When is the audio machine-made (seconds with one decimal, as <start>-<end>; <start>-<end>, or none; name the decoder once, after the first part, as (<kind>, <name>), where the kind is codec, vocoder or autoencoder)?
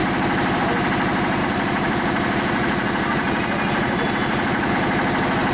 1.4-4.7 (vocoder, Vocos)